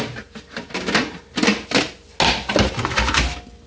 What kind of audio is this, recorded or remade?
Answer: recorded